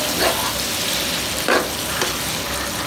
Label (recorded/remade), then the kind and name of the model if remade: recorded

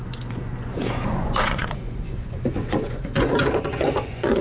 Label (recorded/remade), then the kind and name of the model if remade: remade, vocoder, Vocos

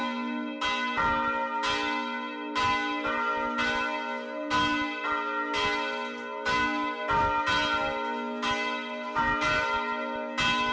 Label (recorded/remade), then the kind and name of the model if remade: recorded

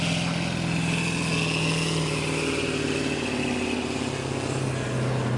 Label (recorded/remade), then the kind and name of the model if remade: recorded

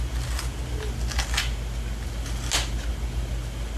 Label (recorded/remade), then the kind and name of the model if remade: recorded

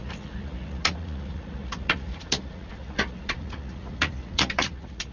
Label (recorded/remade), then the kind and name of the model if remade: remade, vocoder, Vocos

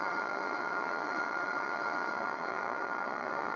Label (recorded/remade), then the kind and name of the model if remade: remade, vocoder, Vocos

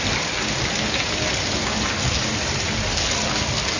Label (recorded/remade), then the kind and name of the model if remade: recorded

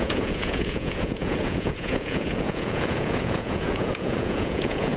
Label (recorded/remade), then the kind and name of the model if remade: remade, vocoder, Vocos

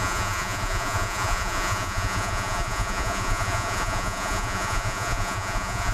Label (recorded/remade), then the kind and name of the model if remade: remade, vocoder, Vocos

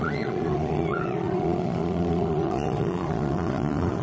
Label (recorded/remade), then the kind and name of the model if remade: remade, vocoder, Vocos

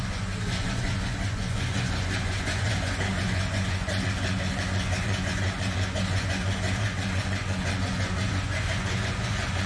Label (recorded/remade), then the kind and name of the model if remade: remade, vocoder, Vocos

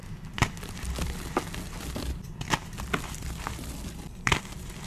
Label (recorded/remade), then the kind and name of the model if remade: recorded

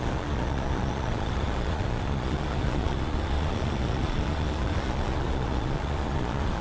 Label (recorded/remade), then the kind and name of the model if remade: remade, vocoder, Vocos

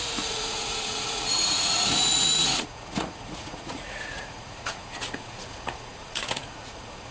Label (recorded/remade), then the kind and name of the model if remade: remade, vocoder, Vocos